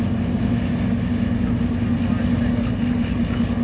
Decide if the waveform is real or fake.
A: real